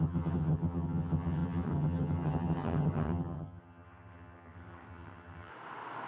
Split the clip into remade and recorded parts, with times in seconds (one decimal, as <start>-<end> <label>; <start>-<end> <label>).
0.0-5.5 remade; 5.5-6.1 recorded